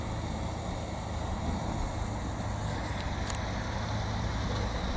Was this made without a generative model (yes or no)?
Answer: yes